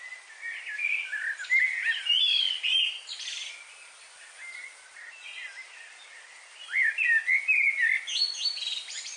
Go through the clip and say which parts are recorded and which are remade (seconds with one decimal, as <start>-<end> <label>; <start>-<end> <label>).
0.0-9.2 recorded

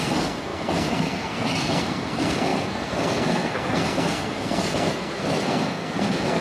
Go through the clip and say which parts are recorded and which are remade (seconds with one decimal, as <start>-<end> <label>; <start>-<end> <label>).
0.0-6.4 remade

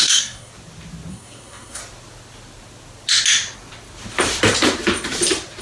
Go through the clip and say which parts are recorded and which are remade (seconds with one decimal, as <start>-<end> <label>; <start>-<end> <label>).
0.0-0.5 remade; 0.5-1.1 recorded; 1.1-1.8 remade; 1.8-5.6 recorded

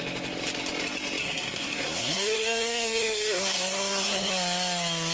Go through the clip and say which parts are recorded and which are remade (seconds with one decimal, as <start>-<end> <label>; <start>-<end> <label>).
0.0-1.2 recorded; 1.2-4.3 remade; 4.3-5.1 recorded

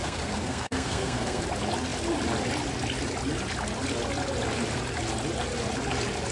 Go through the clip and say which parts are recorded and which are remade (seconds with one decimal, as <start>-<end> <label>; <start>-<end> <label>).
0.0-1.4 remade; 1.4-6.3 recorded

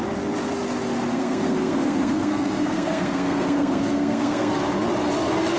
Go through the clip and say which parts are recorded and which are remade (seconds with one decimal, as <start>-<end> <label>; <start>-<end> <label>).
0.0-1.1 recorded; 1.1-4.5 remade; 4.5-5.6 recorded